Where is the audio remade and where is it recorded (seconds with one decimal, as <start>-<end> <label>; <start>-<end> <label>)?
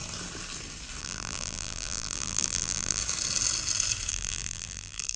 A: 0.0-1.0 recorded; 1.0-3.0 remade; 3.0-4.1 recorded; 4.1-5.2 remade